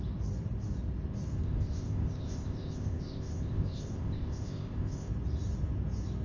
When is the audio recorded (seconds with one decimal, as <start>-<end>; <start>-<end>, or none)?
0.0-1.4; 5.1-6.2